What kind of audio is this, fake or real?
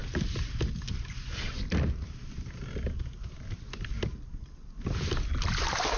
real